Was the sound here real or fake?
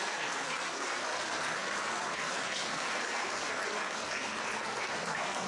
fake